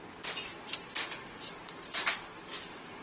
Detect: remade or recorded recorded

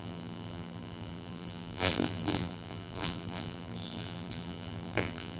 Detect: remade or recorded remade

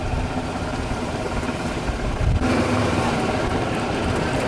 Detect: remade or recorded remade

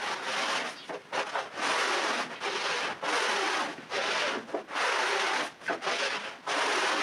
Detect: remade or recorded recorded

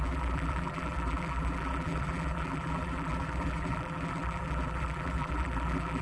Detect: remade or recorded remade